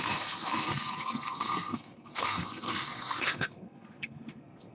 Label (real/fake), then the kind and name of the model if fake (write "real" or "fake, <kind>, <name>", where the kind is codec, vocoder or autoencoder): fake, codec, SNAC